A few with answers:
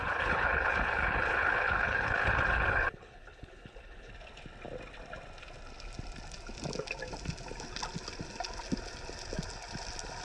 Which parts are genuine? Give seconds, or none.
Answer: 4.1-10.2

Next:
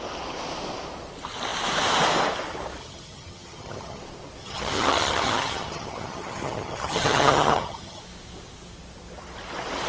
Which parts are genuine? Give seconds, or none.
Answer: 0.0-2.8; 4.0-4.4; 8.0-9.9

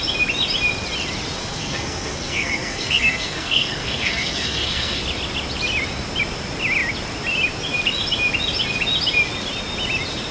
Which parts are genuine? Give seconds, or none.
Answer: 0.0-1.4; 5.0-10.3